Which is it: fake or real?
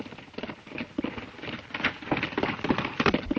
real